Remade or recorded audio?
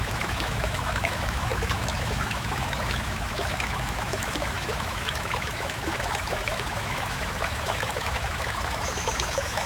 remade